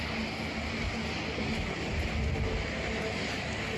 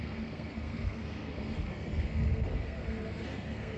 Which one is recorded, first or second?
first